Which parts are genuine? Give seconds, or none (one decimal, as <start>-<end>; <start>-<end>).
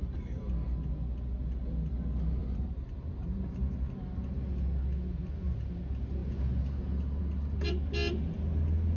0.0-2.4; 3.4-9.0